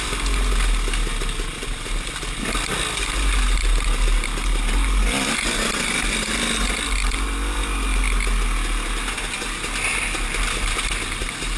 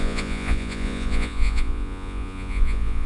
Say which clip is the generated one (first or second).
second